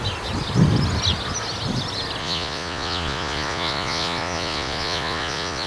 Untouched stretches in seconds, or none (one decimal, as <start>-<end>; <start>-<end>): 0.0-2.2